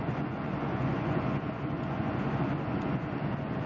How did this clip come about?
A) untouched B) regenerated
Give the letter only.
B